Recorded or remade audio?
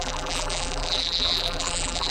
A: remade